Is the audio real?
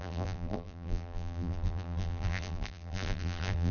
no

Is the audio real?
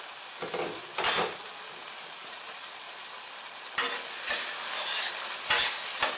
yes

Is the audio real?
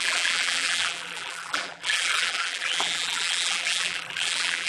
no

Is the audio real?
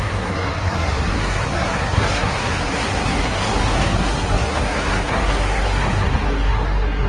no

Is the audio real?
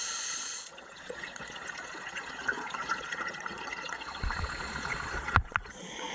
no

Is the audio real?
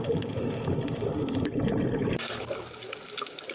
yes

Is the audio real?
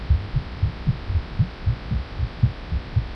yes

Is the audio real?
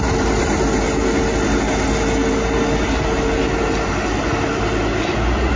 yes